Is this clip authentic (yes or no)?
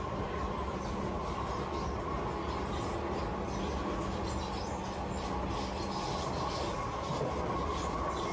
yes